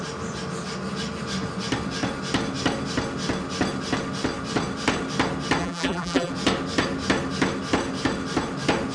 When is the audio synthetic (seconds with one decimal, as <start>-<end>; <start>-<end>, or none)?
5.6-6.3